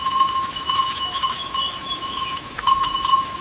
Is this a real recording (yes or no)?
no